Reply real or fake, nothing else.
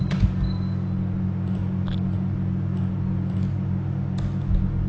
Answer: real